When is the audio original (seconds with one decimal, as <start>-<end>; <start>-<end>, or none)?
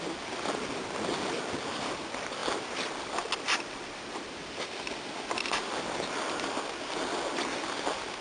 0.0-2.4; 4.3-8.2